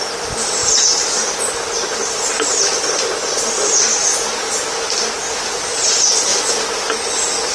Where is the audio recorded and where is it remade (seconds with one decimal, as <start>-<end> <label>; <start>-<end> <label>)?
0.0-7.5 recorded